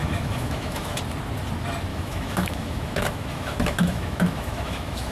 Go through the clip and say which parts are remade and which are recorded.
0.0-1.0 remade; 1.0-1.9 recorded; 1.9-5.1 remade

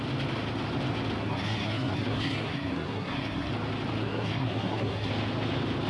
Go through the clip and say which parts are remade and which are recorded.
0.0-1.2 recorded; 1.2-3.5 remade; 3.5-4.0 recorded; 4.0-5.1 remade; 5.1-5.9 recorded